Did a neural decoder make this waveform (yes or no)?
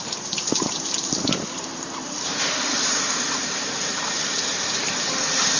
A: yes